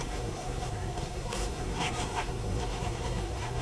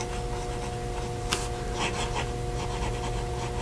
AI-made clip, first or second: first